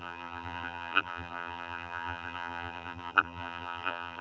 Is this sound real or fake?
fake